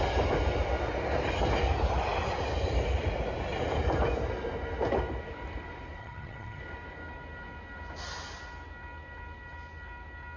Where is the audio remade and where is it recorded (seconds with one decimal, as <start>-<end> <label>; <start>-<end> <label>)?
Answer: 0.0-6.0 recorded; 6.0-6.6 remade; 6.6-10.4 recorded